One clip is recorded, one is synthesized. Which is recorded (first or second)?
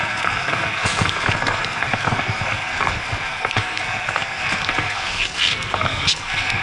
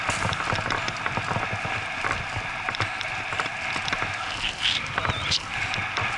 second